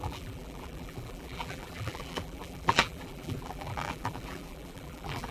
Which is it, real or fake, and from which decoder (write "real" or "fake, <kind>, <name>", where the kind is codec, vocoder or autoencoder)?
fake, vocoder, BigVGAN v2